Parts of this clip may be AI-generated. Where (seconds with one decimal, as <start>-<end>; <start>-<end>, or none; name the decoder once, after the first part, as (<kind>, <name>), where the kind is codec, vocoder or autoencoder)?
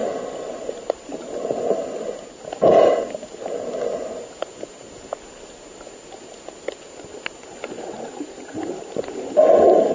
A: none